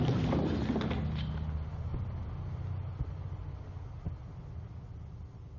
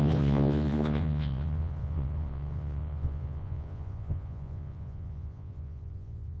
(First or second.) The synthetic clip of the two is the second